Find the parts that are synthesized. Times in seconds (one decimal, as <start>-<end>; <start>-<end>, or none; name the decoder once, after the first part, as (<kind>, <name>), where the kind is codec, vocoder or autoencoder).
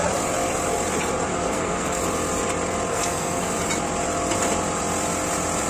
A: 1.3-2.0 (codec, SNAC); 2.9-3.5